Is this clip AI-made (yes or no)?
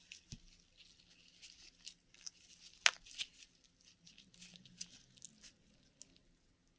no